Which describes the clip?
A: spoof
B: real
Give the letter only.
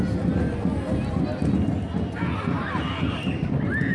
B